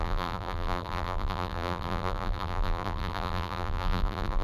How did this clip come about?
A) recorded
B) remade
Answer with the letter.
B